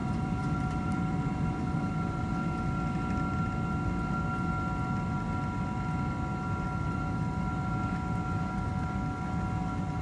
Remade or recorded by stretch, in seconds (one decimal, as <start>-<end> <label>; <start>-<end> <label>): 0.0-2.2 remade; 2.2-10.0 recorded